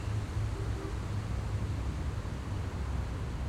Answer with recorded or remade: recorded